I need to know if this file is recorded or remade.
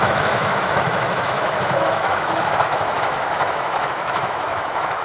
remade